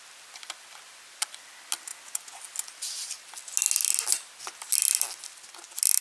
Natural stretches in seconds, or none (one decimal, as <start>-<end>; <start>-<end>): 0.0-6.0